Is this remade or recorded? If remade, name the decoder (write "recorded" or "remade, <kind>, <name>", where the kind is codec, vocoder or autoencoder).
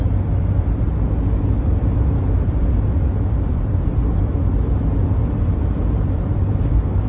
recorded